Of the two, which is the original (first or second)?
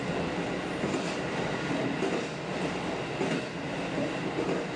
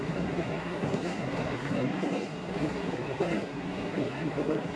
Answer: first